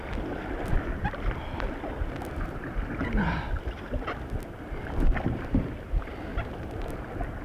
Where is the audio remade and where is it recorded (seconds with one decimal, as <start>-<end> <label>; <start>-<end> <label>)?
0.0-6.3 recorded; 6.3-6.9 remade; 6.9-7.4 recorded